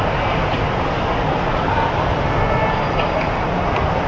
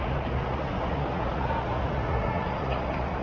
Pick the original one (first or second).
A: first